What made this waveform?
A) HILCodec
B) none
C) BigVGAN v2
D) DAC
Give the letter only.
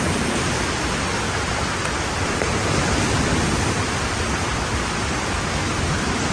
C